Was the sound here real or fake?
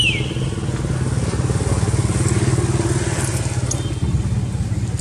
real